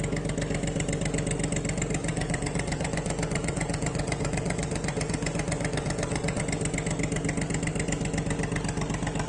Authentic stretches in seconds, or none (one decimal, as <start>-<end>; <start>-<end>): 0.0-2.0; 6.4-9.3